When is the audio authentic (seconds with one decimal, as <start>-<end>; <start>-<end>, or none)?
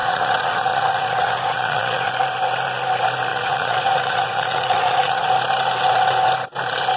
2.1-3.3; 5.3-7.0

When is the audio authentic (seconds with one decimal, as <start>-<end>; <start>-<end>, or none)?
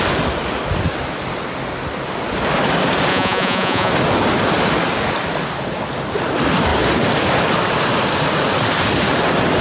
0.0-3.1; 3.9-9.6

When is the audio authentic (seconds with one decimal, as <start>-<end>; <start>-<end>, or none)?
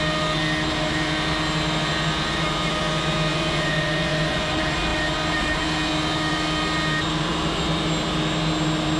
0.0-3.3; 4.5-9.0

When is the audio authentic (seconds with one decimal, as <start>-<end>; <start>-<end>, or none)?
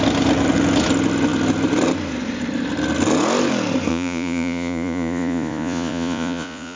0.0-3.9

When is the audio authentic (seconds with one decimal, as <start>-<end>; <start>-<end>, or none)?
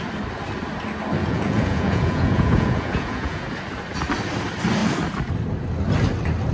0.0-1.2; 3.4-6.5